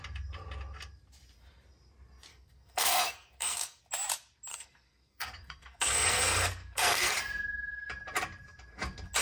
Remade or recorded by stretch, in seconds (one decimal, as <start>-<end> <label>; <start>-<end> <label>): 0.0-2.3 recorded; 2.3-3.8 remade; 3.8-4.5 recorded; 4.5-7.1 remade; 7.1-9.2 recorded